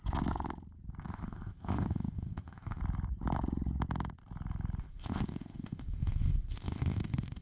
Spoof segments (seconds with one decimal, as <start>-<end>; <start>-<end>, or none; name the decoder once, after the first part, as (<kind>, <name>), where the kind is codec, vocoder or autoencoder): 1.0-2.8 (codec, ZipCodec); 4.8-7.4